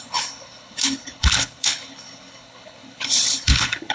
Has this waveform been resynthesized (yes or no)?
yes